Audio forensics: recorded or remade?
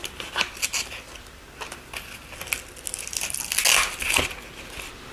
recorded